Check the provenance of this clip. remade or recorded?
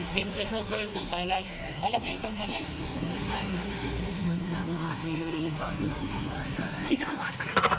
remade